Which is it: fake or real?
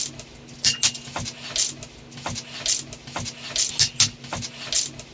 real